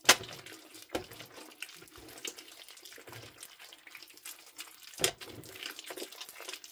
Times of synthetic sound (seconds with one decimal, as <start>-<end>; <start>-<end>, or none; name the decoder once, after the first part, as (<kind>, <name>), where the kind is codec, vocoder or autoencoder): none